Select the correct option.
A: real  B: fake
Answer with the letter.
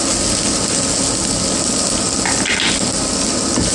A